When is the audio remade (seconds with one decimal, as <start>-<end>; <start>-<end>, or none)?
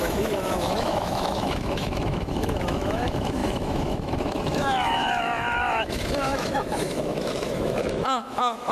0.0-8.7